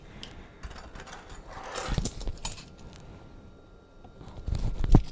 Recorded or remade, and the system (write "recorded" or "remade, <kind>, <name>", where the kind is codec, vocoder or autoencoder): recorded